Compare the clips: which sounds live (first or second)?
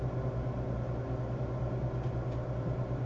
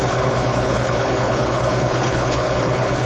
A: first